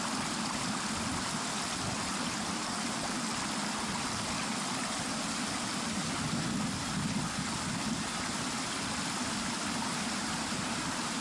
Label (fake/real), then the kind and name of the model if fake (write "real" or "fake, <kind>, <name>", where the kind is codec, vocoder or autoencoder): real